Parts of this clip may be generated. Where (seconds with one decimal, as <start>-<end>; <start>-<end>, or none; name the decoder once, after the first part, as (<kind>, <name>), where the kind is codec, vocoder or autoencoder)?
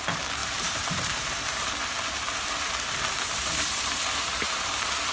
0.0-5.1 (vocoder, BigVGAN v2)